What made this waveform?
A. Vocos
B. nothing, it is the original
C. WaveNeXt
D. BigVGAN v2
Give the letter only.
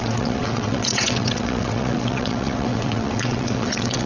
C